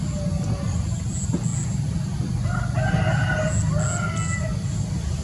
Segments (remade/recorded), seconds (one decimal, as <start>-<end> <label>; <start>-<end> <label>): 0.0-5.2 recorded